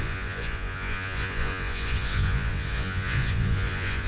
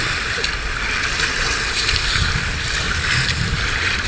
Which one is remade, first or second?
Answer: first